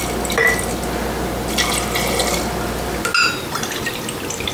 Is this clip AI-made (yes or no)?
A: no